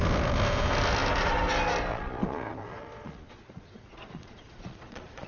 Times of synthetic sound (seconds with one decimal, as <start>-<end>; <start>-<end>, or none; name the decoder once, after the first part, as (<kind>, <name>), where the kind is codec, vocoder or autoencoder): 1.9-5.3 (vocoder, Vocos)